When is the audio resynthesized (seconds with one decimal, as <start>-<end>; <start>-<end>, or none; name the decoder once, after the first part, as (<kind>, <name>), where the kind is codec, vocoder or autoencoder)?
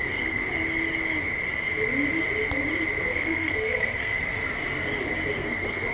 0.0-0.4 (codec, SNAC); 3.0-4.2; 5.3-5.9